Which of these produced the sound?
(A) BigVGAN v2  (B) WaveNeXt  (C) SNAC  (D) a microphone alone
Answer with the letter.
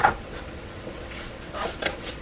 B